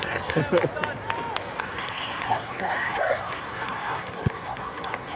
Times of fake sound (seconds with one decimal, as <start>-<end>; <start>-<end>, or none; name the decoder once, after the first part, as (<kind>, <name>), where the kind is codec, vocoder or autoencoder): 0.0-0.4 (codec, SNAC); 1.6-5.2